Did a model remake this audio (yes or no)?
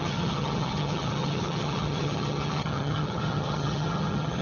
yes